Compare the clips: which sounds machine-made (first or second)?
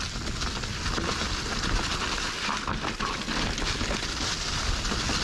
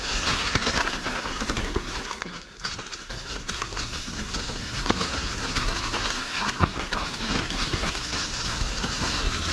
second